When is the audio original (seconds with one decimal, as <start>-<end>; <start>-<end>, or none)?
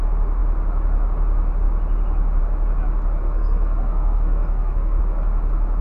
0.0-3.2; 5.0-5.8